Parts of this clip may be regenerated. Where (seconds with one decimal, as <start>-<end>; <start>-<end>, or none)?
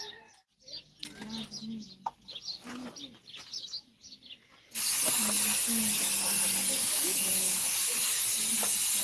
6.8-8.1